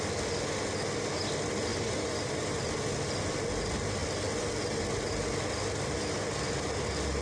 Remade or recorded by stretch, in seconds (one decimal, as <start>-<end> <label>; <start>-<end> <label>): 0.0-1.7 recorded; 1.7-2.6 remade; 2.6-7.2 recorded